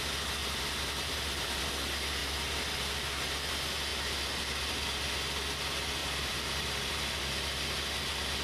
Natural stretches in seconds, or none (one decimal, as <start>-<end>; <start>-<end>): 0.0-0.4; 1.6-6.0; 6.9-8.4